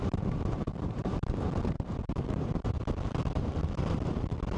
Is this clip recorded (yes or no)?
no